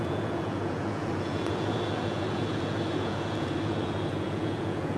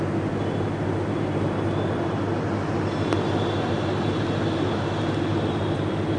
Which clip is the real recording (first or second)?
second